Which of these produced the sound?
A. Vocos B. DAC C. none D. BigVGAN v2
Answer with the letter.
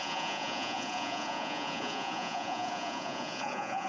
A